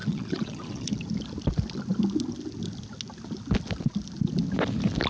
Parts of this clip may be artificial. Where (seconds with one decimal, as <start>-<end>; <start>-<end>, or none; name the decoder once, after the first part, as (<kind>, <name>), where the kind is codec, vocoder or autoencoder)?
0.0-0.9 (vocoder, Vocos)